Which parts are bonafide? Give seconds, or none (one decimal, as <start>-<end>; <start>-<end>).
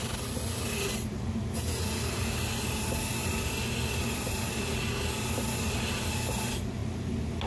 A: 0.0-7.5